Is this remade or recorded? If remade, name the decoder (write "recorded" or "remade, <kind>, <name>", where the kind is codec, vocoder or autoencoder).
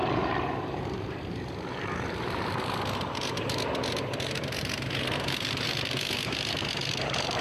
remade, vocoder, BigVGAN v2